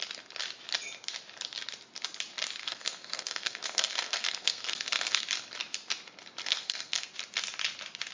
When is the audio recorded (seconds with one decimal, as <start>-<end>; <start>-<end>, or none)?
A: 0.0-2.6; 5.2-6.4; 7.1-8.1